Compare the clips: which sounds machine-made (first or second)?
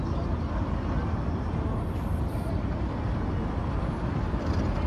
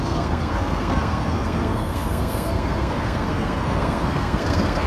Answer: second